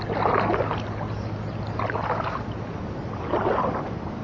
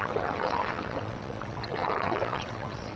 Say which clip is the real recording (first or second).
first